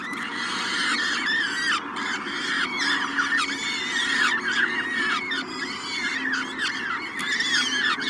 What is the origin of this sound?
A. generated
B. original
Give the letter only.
B